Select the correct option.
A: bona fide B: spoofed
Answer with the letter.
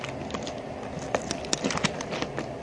A